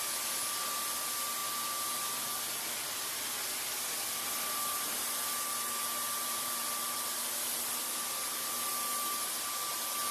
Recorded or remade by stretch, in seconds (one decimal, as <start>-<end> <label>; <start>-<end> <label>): 0.0-10.1 recorded